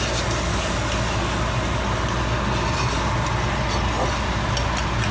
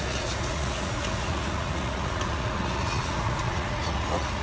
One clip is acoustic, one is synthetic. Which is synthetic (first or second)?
second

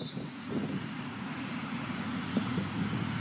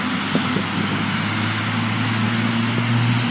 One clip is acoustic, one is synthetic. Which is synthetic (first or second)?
first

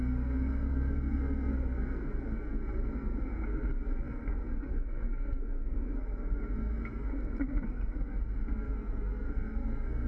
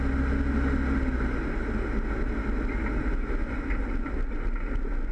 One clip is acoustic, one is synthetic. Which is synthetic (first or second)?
first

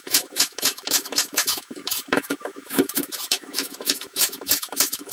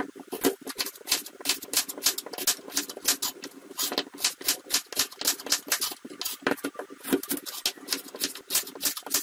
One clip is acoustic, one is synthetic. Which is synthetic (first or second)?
first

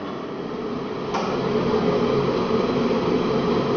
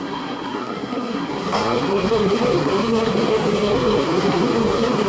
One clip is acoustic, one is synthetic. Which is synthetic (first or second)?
second